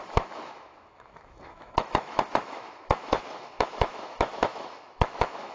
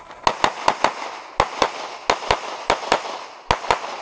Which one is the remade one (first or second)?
first